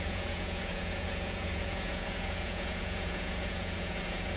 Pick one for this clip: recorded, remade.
remade